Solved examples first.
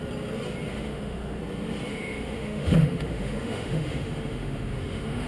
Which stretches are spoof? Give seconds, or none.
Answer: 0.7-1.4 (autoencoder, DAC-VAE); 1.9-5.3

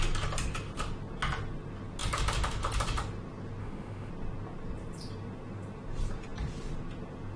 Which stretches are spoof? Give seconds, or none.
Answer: 3.6-4.1 (autoencoder, DAC-VAE)

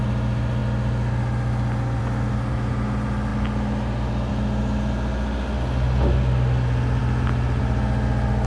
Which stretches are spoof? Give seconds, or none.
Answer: none